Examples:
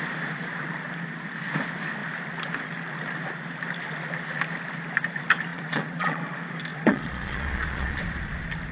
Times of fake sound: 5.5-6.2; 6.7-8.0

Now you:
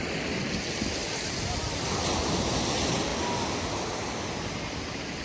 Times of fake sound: none

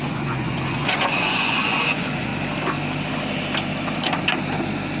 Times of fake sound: 0.0-2.3